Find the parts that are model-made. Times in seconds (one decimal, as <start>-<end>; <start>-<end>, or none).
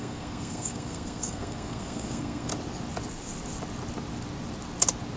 0.0-2.5